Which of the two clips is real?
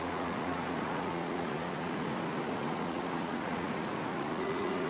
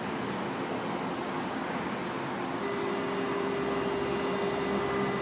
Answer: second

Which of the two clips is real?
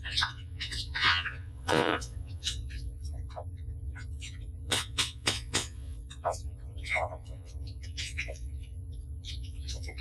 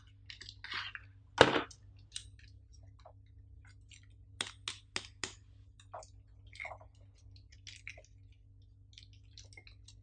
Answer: second